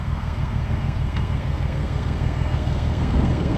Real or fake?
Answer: fake